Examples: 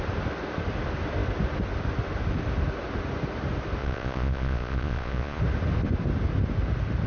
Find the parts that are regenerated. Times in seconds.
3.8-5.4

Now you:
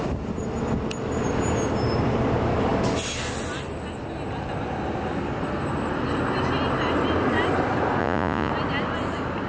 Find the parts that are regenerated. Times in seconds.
8.0-8.5

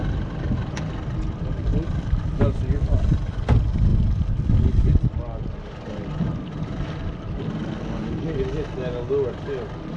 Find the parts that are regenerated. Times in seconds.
none

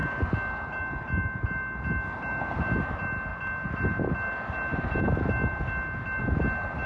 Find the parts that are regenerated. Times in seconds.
none